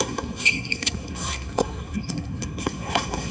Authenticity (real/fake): fake